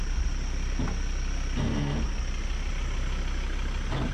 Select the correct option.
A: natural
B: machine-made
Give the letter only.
A